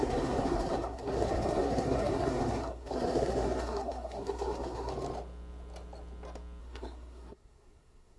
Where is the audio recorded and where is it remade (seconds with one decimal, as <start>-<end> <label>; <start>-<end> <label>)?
0.0-4.9 remade; 4.9-6.6 recorded; 6.6-8.2 remade